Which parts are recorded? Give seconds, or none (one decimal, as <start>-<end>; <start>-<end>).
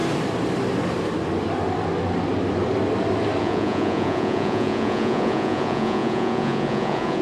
0.0-3.4